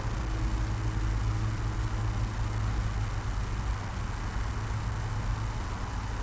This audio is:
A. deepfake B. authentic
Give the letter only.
B